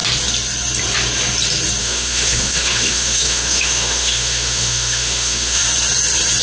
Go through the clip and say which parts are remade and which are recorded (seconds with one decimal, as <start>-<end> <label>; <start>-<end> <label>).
0.0-1.8 recorded; 1.8-5.6 remade; 5.6-6.4 recorded